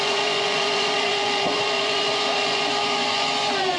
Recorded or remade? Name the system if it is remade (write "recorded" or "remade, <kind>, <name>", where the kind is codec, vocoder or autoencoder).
remade, vocoder, Vocos